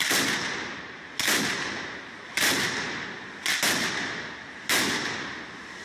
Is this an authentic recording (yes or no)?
yes